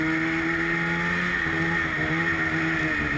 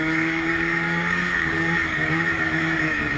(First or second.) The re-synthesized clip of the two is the second